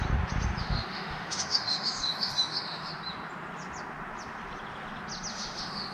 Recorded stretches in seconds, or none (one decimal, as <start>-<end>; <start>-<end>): 0.0-0.6; 2.9-5.3